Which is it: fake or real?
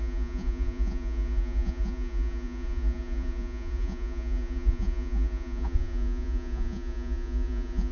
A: fake